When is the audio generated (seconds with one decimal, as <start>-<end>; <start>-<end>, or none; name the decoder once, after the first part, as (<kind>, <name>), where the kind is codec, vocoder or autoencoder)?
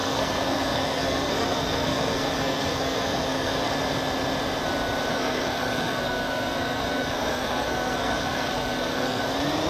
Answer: 0.0-3.7 (codec, SNAC); 5.1-9.2